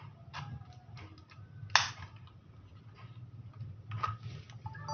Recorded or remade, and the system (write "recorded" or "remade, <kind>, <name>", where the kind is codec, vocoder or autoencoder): recorded